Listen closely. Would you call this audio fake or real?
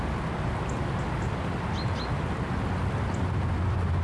real